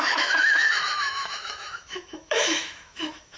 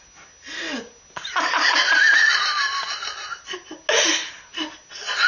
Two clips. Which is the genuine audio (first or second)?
second